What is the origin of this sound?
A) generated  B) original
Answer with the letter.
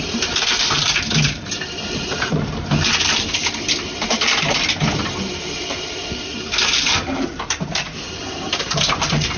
A